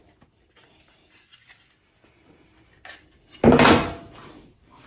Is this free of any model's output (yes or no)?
yes